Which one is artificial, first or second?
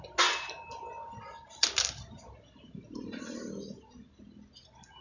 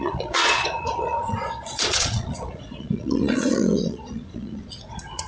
second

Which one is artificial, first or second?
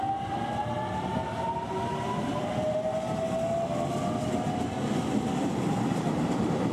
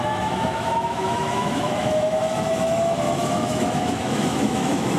second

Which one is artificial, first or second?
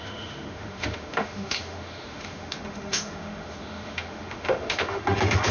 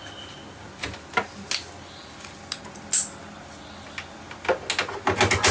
first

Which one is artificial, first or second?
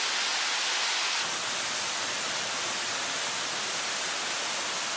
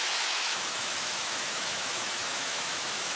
second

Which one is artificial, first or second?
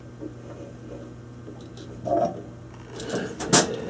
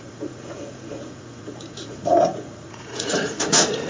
second